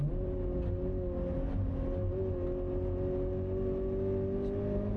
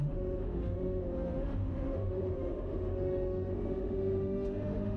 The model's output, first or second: second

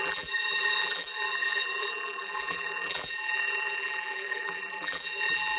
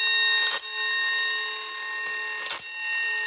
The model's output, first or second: first